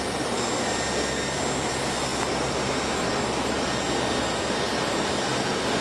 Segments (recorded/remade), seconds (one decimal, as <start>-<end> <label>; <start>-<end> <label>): 0.0-5.8 recorded